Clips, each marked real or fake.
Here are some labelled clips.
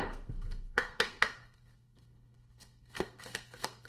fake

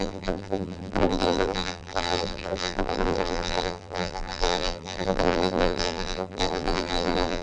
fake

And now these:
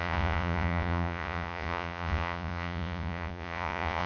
fake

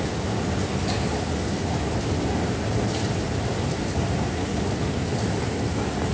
real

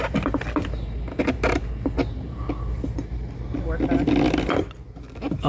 real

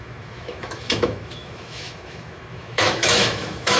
fake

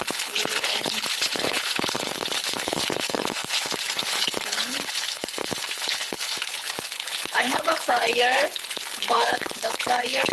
fake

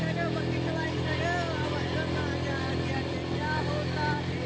real